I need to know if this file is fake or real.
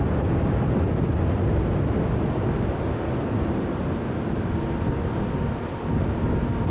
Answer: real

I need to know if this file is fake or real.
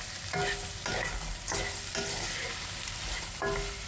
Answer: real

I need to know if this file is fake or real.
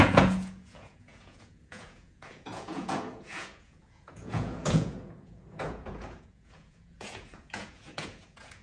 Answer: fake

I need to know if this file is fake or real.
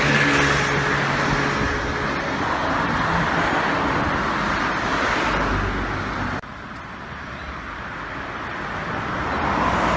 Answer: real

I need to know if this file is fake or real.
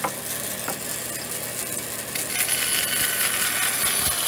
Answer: real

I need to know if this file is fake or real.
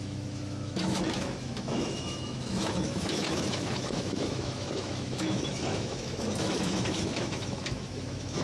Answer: fake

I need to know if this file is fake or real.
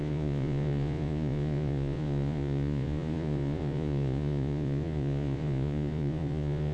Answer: fake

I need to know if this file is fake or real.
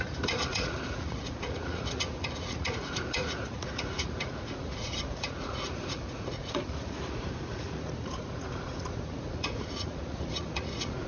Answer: fake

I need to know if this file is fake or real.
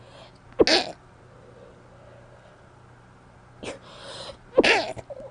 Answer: real